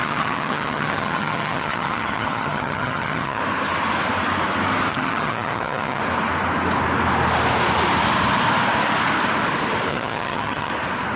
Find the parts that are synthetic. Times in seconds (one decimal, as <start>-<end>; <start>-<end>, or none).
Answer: 0.0-3.4; 4.9-6.0; 9.9-10.7